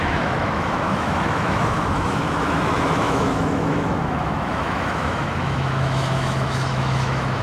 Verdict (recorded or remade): remade